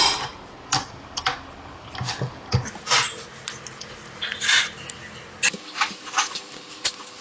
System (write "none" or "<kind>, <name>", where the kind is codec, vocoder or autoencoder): none